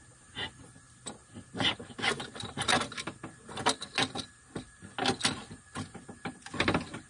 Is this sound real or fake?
real